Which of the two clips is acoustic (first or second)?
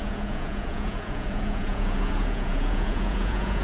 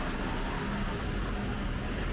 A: second